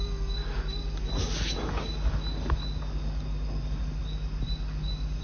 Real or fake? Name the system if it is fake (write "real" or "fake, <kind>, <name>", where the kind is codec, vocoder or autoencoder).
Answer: real